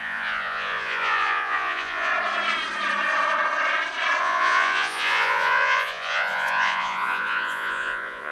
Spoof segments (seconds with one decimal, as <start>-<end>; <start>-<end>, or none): 0.0-2.1; 4.2-8.3